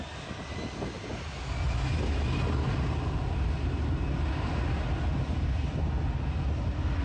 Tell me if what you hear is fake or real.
real